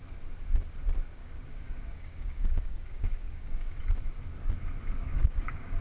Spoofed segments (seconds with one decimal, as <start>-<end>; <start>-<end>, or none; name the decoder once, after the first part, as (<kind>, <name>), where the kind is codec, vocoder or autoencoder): 1.2-3.8 (codec, DAC); 5.0-5.8